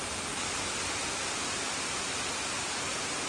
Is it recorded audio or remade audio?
recorded